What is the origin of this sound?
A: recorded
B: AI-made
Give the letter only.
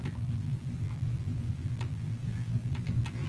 B